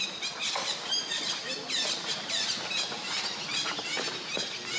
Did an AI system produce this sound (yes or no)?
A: no